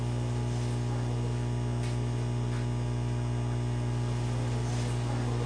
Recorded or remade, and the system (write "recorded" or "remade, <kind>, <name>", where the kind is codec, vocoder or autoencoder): recorded